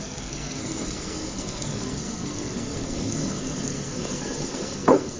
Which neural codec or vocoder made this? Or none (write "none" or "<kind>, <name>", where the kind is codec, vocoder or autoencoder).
codec, SNAC